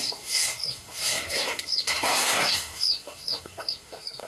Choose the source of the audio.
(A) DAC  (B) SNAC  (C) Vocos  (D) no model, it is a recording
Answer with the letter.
B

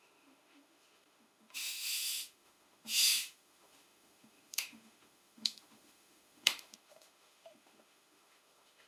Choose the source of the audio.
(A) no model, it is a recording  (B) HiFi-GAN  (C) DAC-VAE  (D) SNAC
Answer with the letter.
C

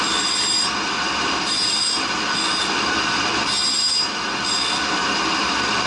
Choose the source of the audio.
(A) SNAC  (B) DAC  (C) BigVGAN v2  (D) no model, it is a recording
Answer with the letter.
D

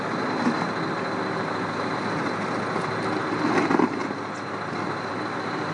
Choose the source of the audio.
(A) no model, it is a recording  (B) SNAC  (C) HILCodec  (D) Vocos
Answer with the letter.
A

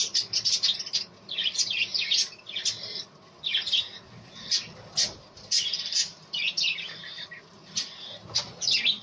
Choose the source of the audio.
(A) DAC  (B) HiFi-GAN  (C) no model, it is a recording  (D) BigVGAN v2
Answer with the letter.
C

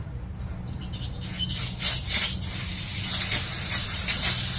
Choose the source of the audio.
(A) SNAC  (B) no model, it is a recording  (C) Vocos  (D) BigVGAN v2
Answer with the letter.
B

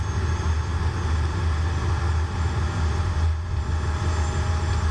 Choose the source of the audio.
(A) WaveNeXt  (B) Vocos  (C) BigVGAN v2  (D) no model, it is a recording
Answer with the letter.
D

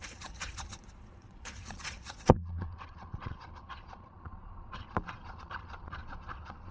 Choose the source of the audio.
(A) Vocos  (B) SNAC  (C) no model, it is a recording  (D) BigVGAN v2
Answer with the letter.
A